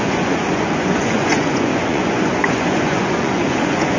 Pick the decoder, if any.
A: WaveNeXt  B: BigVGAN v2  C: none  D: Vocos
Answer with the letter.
D